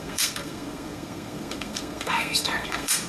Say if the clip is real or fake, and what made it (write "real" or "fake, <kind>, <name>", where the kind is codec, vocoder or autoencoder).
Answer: fake, codec, SNAC